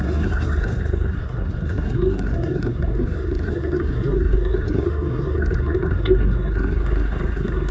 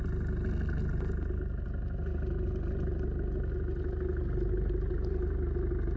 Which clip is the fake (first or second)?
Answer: first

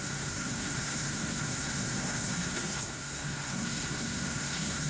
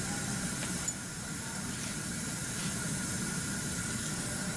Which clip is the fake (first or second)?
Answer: first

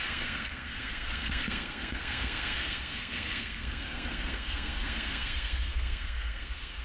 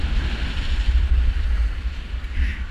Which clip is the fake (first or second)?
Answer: first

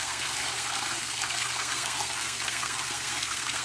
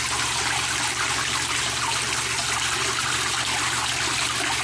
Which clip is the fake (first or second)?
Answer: first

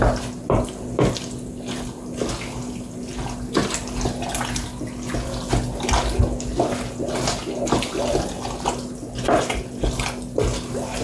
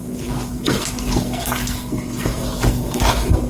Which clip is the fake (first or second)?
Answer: second